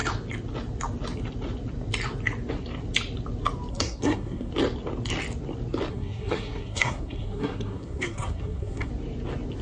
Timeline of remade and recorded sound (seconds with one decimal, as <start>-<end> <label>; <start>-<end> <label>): 0.0-3.7 recorded; 3.7-4.5 remade; 4.5-5.9 recorded; 5.9-8.9 remade; 8.9-9.6 recorded